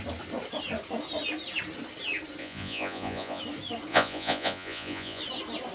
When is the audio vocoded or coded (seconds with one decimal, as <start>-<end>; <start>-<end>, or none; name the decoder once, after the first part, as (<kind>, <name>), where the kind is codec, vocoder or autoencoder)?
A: 2.4-3.4 (vocoder, Vocos); 3.9-5.2